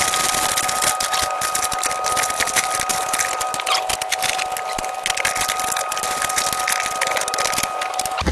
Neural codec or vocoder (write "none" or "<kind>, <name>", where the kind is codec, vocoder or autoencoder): none